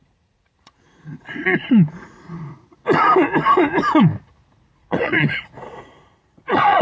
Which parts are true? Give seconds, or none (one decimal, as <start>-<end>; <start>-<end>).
3.1-4.8